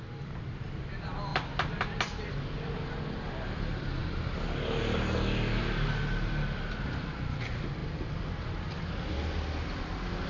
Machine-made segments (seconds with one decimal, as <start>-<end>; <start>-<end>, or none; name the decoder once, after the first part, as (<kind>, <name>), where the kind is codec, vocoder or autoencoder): 1.3-2.3 (vocoder, BigVGAN v2); 7.8-8.7